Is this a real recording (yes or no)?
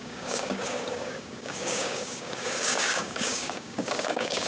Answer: no